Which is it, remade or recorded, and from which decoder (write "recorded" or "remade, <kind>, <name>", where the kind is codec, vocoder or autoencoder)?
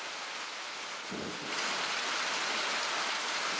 recorded